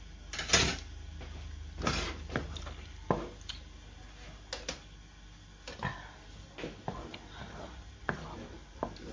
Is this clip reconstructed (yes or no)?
no